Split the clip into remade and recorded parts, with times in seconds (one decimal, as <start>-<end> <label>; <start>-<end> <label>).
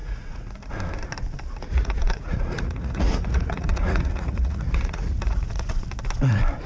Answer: 0.0-0.7 remade; 0.7-1.7 recorded; 1.7-5.7 remade; 5.7-6.7 recorded